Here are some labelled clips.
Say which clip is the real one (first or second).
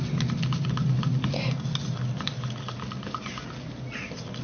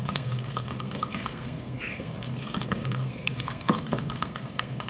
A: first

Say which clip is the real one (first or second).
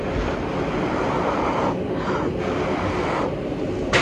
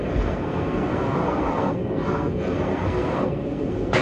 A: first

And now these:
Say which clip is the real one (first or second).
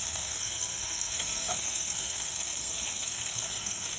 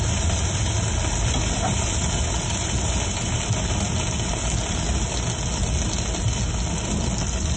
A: second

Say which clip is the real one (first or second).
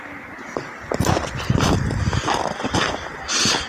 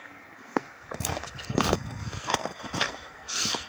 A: first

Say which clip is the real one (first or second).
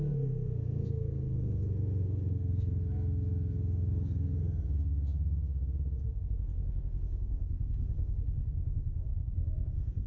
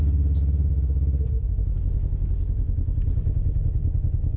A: second